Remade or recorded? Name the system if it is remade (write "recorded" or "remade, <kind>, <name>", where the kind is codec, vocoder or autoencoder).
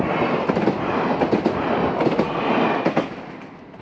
recorded